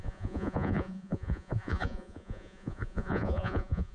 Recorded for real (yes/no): no